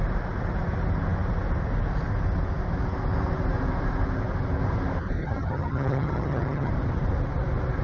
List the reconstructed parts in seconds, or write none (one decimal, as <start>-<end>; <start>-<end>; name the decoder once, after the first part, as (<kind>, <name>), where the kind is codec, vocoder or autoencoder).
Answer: 5.2-6.7 (vocoder, HiFi-GAN)